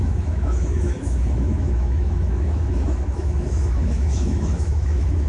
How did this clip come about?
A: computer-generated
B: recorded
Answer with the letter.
A